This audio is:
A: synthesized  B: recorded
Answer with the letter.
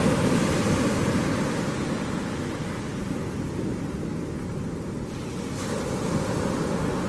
B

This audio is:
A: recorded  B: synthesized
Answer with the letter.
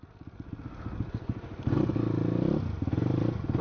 A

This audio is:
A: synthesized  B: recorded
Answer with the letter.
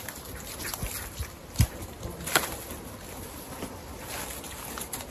B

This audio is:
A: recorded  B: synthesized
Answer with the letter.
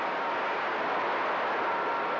A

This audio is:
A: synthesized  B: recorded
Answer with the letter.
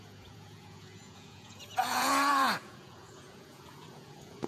A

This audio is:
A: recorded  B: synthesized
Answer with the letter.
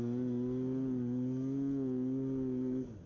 A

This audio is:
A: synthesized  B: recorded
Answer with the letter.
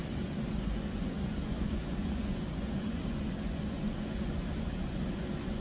A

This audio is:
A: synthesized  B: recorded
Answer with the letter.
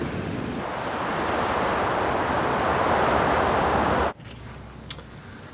B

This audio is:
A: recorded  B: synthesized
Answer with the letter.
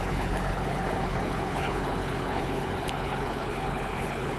B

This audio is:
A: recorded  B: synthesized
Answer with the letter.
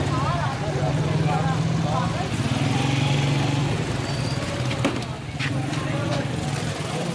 A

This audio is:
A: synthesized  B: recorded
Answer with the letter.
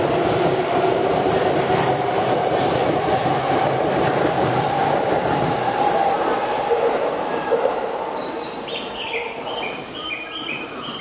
A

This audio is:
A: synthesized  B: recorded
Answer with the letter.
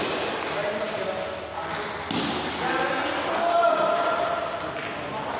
B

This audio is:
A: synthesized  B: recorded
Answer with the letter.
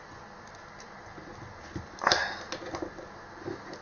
B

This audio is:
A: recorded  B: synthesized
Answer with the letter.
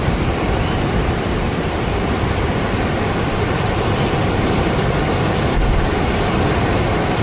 B